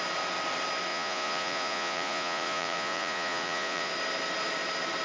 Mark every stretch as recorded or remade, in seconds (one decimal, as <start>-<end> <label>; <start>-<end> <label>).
0.0-0.9 recorded; 0.9-3.9 remade; 3.9-5.0 recorded